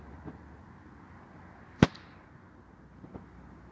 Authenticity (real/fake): real